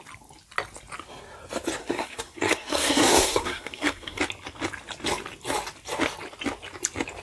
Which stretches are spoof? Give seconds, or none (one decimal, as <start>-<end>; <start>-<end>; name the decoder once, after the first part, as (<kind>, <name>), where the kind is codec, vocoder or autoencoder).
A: 1.8-4.2 (codec, SNAC)